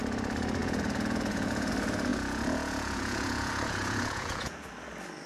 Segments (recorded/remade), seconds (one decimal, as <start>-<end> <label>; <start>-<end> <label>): 0.0-0.6 recorded; 0.6-1.7 remade; 1.7-2.1 recorded; 2.1-4.7 remade; 4.7-5.3 recorded